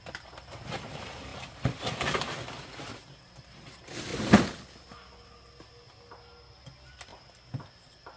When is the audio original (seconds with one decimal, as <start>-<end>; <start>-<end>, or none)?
0.0-8.2